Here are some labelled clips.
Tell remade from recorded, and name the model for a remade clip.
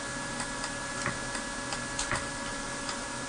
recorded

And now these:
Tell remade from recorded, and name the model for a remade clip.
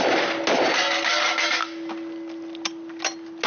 recorded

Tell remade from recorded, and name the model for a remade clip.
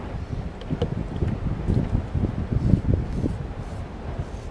recorded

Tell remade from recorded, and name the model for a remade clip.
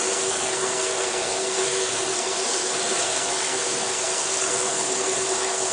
remade, codec, SNAC